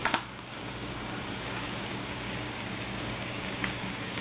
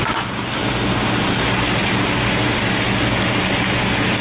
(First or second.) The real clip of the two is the second